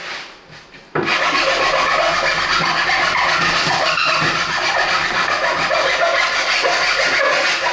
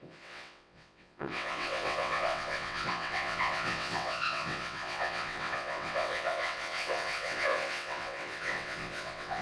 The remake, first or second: second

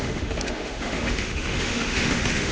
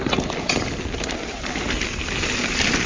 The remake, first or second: first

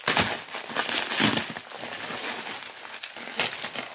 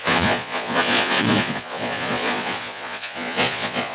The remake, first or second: second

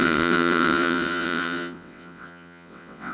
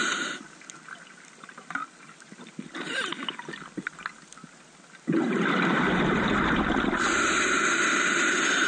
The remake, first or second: first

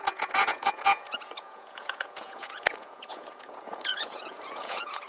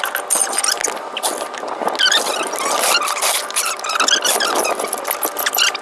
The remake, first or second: first